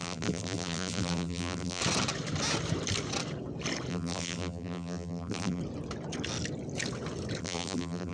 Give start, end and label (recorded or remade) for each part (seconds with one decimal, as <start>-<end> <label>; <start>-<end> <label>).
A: 0.0-1.8 remade; 1.8-3.9 recorded; 3.9-5.6 remade; 5.6-7.4 recorded; 7.4-8.1 remade